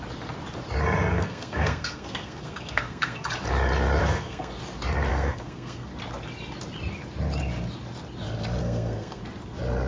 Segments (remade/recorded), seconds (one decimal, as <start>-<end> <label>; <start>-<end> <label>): 0.0-1.1 recorded; 1.1-3.3 remade; 3.3-4.0 recorded; 4.0-4.6 remade; 4.6-5.1 recorded; 5.1-5.9 remade; 5.9-8.6 recorded; 8.6-9.2 remade; 9.2-9.9 recorded